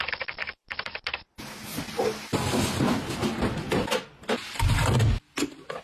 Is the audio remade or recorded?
recorded